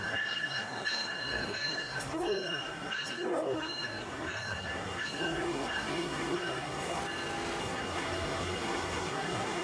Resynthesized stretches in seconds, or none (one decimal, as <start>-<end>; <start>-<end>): 0.0-7.0; 7.6-9.6